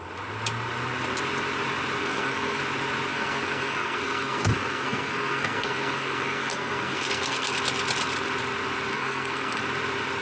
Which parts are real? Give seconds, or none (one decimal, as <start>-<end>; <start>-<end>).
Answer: 0.0-2.0; 2.6-3.1; 7.6-8.9; 9.6-10.2